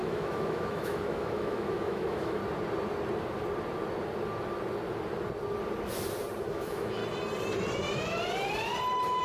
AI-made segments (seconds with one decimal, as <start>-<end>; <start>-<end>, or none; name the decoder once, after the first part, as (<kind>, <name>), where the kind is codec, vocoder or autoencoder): 0.0-2.4 (autoencoder, DAC-VAE); 6.5-7.0